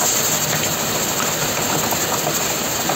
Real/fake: real